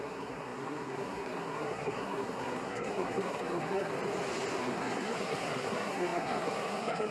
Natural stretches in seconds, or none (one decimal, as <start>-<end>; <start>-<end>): 3.9-4.6